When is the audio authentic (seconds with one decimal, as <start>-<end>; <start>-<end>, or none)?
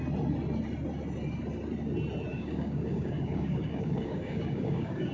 0.0-2.3